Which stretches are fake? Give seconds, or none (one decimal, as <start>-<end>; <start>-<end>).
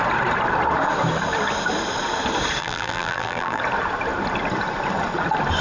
2.6-3.6